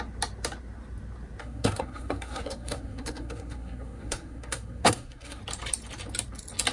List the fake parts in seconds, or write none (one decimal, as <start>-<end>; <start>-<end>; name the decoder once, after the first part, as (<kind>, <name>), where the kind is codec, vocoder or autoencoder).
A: 1.4-5.4 (codec, SNAC)

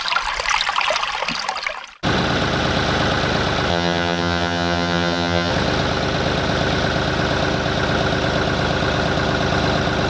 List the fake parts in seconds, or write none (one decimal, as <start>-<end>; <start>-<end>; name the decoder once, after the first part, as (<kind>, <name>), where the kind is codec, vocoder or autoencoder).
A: 3.7-5.5 (vocoder, HiFi-GAN)

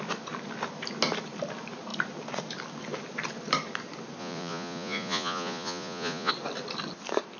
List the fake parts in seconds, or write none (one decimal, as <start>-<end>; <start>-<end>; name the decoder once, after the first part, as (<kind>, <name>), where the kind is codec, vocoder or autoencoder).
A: 4.2-6.3 (vocoder, Vocos)